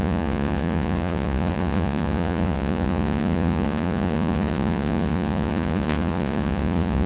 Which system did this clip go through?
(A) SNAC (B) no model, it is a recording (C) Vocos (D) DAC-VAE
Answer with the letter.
C